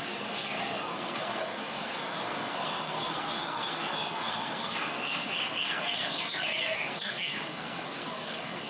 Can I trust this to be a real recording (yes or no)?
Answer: no